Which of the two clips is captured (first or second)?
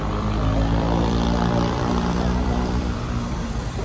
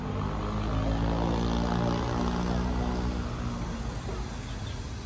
second